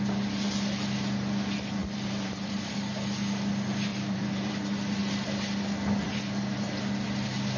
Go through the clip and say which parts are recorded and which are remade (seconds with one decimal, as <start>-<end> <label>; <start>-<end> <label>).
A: 0.0-1.8 recorded; 1.8-2.7 remade; 2.7-3.9 recorded; 3.9-4.5 remade; 4.5-7.6 recorded